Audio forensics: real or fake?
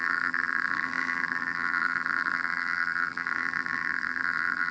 fake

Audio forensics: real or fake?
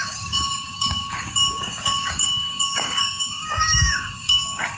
fake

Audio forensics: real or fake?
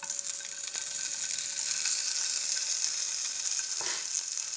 real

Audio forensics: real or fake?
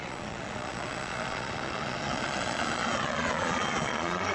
fake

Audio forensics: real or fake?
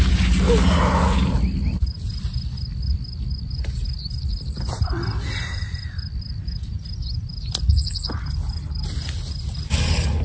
real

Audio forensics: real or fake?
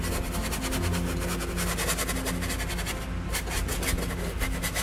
real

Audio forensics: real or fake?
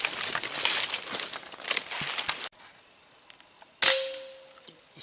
real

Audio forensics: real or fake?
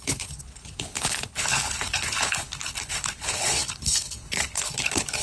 fake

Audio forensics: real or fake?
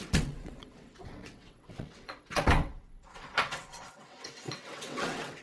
fake